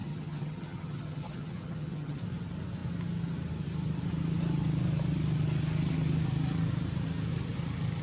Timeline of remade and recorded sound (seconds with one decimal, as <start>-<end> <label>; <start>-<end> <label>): 0.0-2.2 remade; 2.2-8.0 recorded

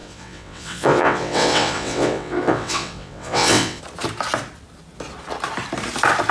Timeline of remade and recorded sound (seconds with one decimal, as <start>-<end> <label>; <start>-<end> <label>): 0.0-3.8 remade; 3.8-6.3 recorded

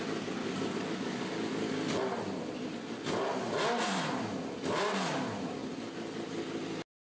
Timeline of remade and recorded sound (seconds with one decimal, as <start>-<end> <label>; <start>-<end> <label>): 0.0-0.4 recorded; 0.4-1.6 remade; 1.6-7.1 recorded